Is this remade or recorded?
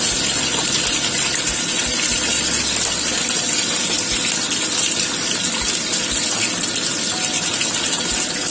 recorded